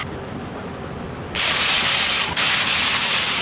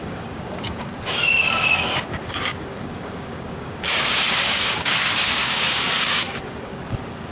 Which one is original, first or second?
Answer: first